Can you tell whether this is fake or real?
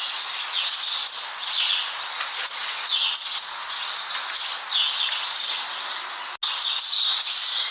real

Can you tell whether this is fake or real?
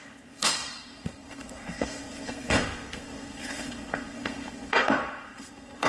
fake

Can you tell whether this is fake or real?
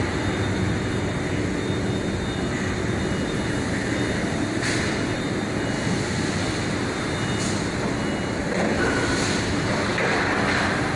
real